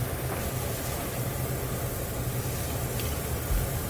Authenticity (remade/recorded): recorded